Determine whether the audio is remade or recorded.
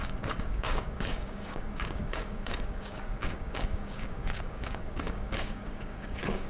remade